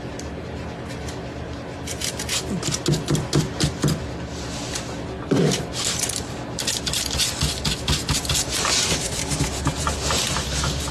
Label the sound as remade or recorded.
recorded